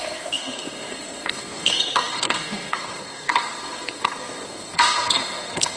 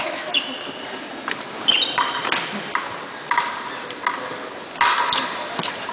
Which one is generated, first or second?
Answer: first